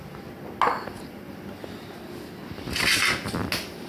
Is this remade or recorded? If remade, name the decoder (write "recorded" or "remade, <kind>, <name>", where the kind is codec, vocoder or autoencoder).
recorded